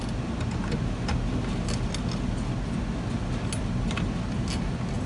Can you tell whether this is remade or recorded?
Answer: recorded